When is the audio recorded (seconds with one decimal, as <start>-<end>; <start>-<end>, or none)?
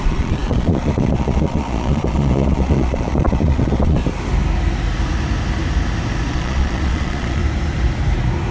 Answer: 4.0-6.3; 7.4-8.5